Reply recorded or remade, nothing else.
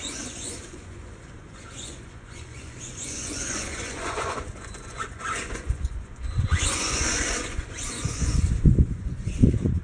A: remade